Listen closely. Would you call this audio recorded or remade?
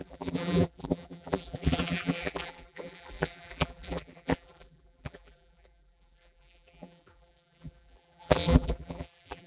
remade